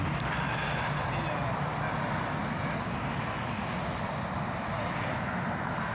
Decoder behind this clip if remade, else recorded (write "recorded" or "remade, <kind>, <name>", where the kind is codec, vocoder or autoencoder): recorded